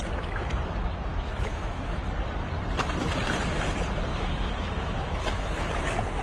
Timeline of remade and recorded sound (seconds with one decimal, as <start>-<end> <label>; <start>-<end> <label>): 0.0-1.1 recorded; 1.1-2.0 remade; 2.0-4.1 recorded; 4.1-5.7 remade; 5.7-6.2 recorded